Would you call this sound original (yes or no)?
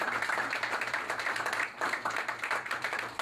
no